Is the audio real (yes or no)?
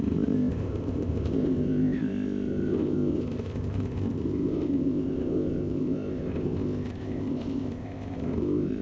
no